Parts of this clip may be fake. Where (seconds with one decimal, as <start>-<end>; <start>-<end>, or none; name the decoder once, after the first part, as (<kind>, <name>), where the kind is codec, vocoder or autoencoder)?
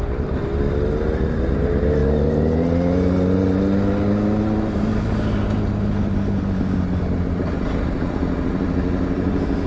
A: none